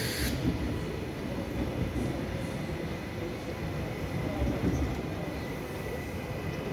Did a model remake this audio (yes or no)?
no